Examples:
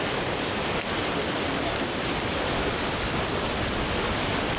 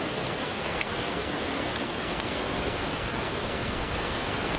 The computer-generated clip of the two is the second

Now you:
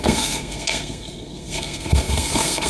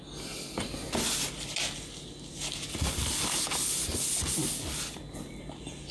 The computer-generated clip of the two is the first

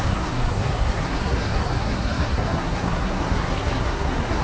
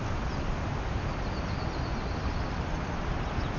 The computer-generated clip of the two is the first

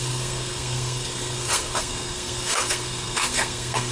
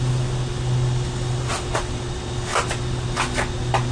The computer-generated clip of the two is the first